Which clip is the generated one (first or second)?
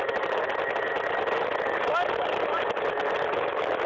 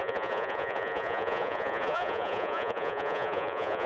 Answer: second